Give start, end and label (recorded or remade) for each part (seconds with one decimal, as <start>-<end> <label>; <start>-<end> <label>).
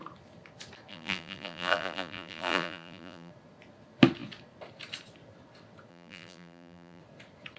0.0-0.9 recorded; 0.9-3.3 remade; 3.3-5.9 recorded; 5.9-7.0 remade; 7.0-7.6 recorded